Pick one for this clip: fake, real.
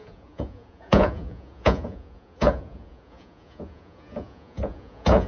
fake